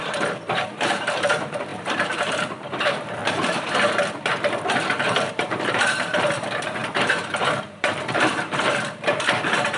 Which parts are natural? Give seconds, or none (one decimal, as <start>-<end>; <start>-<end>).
3.2-5.3; 6.8-7.6